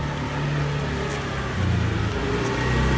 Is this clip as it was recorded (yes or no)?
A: yes